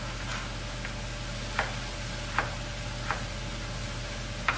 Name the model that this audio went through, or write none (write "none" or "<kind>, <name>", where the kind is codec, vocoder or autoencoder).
none